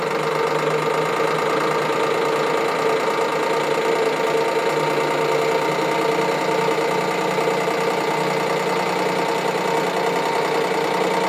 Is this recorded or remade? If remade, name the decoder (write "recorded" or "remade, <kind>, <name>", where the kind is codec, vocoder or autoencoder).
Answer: recorded